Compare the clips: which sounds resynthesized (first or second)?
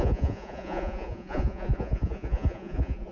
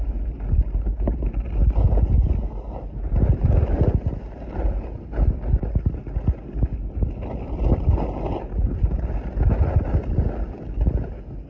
first